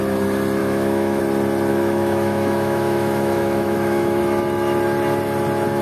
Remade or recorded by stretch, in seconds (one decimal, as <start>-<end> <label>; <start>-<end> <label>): 0.0-0.6 recorded; 0.6-1.2 remade; 1.2-1.7 recorded; 1.7-4.2 remade; 4.2-5.8 recorded